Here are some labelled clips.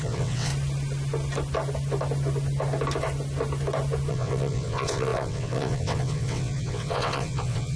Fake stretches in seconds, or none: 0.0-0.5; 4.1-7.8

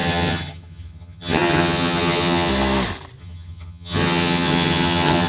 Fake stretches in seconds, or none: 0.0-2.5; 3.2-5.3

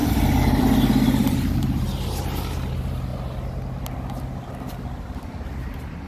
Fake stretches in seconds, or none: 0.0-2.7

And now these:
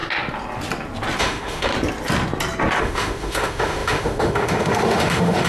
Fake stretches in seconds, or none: 1.2-1.7; 2.8-5.5

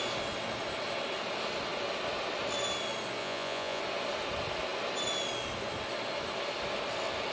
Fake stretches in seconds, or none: 3.2-3.8

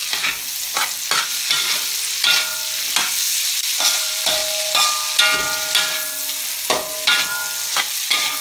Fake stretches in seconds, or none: 3.4-4.4; 7.8-8.4